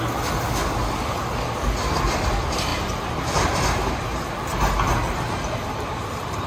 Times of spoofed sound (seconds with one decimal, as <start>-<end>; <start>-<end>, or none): none